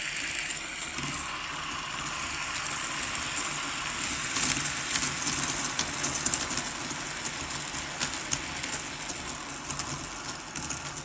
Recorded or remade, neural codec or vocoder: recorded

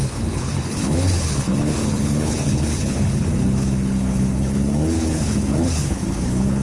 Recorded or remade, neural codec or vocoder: remade, codec, HILCodec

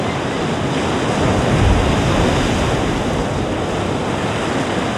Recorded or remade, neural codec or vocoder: recorded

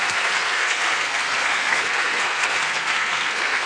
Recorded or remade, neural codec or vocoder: remade, codec, SNAC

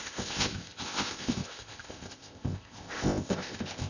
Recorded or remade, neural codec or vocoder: remade, codec, ZipCodec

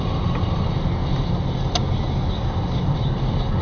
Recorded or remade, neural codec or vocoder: recorded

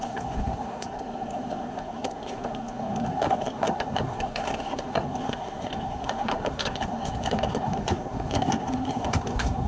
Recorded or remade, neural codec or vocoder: remade, codec, SNAC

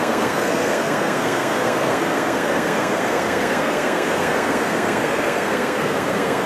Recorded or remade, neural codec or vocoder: remade, codec, SNAC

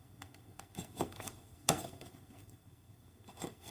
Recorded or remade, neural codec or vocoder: remade, codec, SNAC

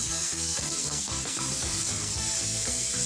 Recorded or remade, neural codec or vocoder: remade, codec, SNAC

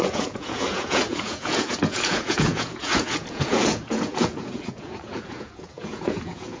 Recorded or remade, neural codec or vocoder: remade, vocoder, Vocos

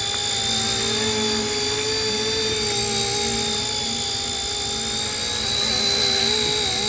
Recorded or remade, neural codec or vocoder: recorded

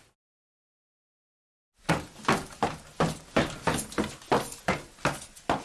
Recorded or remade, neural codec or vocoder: recorded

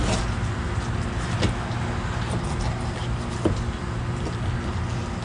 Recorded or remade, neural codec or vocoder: recorded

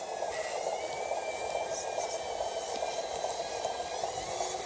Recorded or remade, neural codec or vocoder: recorded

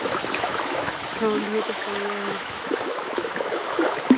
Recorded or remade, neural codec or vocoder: remade, autoencoder, DAC-VAE